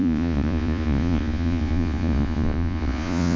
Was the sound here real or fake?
fake